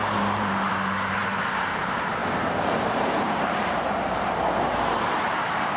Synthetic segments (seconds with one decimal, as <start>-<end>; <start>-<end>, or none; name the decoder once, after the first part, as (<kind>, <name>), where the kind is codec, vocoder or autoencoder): 0.0-5.8 (vocoder, BigVGAN v2)